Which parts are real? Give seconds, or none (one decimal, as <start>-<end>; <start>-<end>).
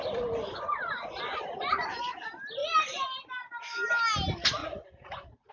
0.0-4.6